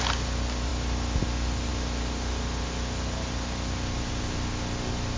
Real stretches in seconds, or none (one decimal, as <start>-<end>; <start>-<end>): 0.0-5.2